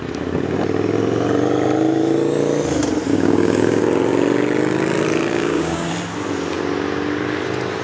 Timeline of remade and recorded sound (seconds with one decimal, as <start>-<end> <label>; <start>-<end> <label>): 0.0-3.1 recorded; 3.1-3.8 remade; 3.8-5.3 recorded; 5.3-5.9 remade; 5.9-7.8 recorded